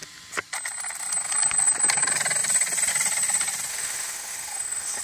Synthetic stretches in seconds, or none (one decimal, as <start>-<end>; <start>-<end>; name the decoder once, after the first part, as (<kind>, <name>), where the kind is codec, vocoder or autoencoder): 3.7-5.0 (autoencoder, DAC-VAE)